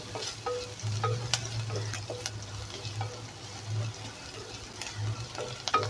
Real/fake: real